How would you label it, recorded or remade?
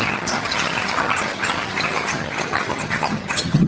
remade